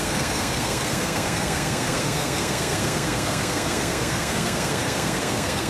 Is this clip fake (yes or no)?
yes